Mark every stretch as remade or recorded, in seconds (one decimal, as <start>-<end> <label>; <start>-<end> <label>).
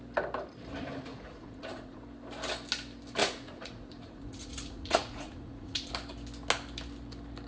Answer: 0.0-1.1 recorded; 1.1-2.0 remade; 2.0-3.2 recorded; 3.2-5.9 remade; 5.9-7.5 recorded